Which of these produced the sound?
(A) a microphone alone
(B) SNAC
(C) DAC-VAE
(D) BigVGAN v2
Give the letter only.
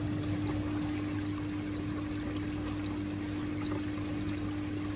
A